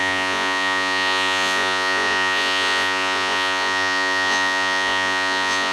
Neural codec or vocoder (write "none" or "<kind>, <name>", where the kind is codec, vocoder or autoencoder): vocoder, Vocos